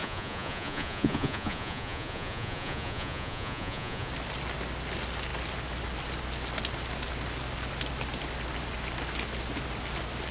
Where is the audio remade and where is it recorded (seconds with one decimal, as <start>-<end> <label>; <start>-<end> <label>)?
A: 0.0-4.1 remade; 4.1-10.3 recorded